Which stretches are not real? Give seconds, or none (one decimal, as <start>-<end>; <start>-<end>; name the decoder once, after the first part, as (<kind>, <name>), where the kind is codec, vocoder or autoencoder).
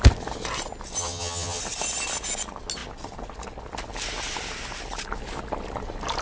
1.0-1.6 (vocoder, HiFi-GAN)